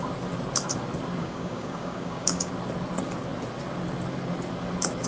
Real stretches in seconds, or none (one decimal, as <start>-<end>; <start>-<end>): 0.0-1.2; 2.5-5.1